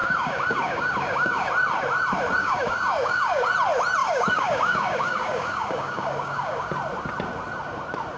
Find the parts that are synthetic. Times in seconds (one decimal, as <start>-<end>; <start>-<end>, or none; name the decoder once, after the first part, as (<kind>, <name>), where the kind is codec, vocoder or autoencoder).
0.0-1.5 (codec, DAC); 2.4-3.5; 4.0-6.7

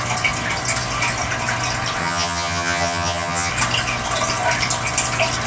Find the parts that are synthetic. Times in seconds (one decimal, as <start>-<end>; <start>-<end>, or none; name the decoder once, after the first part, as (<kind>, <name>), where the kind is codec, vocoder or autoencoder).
2.0-3.5 (vocoder, HiFi-GAN)

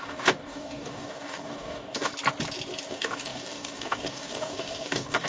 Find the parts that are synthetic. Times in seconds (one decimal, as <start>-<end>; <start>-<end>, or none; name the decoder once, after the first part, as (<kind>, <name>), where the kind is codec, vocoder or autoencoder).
0.0-2.1 (codec, DAC); 2.9-5.3

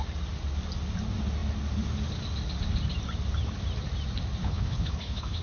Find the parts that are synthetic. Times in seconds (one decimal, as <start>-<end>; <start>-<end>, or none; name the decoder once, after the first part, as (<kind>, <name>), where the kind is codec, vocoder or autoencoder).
4.4-5.4 (codec, HILCodec)

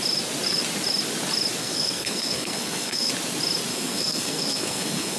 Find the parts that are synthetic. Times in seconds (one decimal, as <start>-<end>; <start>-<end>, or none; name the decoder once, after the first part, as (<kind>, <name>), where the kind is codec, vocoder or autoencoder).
1.6-3.1 (codec, SNAC); 3.7-5.2

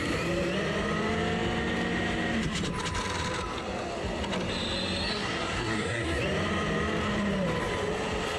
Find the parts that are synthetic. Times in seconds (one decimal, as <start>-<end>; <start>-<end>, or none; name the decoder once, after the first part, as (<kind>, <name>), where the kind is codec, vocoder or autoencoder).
5.1-6.2 (codec, SNAC)

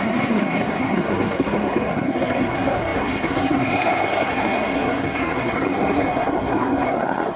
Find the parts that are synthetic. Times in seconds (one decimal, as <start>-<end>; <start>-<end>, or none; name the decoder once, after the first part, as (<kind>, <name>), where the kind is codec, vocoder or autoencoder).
0.0-7.4 (codec, SNAC)

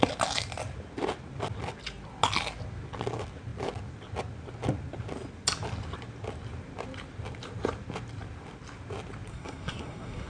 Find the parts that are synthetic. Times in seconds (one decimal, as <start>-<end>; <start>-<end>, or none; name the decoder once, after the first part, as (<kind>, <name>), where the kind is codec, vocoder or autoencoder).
9.3-10.3 (codec, SNAC)